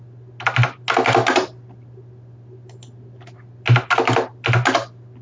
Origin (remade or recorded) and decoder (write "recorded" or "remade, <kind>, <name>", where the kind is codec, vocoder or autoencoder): recorded